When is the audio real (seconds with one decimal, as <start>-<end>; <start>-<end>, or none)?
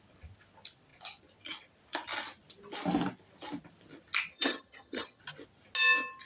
0.0-4.3; 5.2-6.3